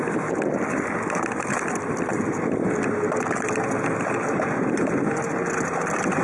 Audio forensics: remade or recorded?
recorded